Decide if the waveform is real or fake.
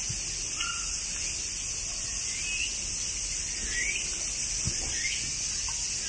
real